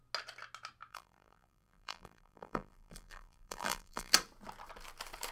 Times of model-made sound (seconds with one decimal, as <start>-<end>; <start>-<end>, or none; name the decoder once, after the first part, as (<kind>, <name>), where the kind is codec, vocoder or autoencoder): 0.9-4.1 (vocoder, BigVGAN v2)